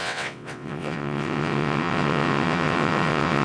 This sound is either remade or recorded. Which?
remade